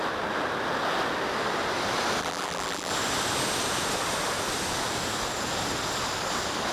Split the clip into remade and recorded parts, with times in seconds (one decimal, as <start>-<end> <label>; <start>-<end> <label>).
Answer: 0.0-2.2 recorded; 2.2-2.9 remade; 2.9-6.7 recorded